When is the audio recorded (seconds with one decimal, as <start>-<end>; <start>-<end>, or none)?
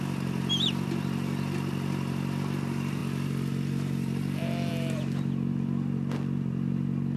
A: 0.0-7.2